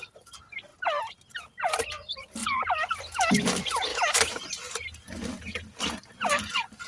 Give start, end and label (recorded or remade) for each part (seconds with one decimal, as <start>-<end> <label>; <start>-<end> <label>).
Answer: 0.0-3.9 recorded; 3.9-4.4 remade; 4.4-6.9 recorded